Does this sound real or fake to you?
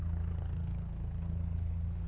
fake